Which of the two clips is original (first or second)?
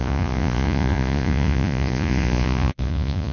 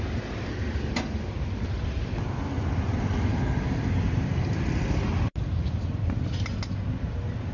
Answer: second